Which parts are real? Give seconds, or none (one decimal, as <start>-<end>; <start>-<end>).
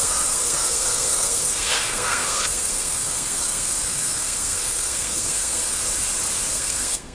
5.8-6.5